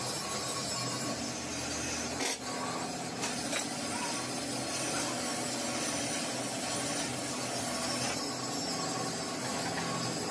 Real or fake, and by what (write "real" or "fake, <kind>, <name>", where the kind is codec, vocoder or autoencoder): real